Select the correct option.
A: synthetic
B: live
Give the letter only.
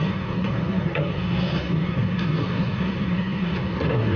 A